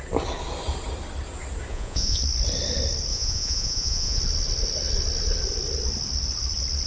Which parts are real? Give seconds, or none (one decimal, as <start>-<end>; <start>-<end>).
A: 0.0-1.7; 2.2-3.1; 4.2-6.9